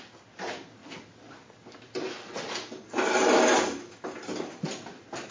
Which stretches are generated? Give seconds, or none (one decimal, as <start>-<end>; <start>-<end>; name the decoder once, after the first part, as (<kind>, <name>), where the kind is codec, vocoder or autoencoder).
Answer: none